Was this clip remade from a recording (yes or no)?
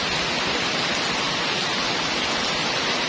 no